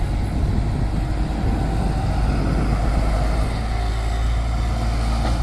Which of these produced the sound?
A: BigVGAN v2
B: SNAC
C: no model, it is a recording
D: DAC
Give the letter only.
C